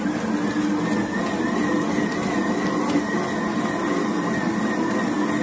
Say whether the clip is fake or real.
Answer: real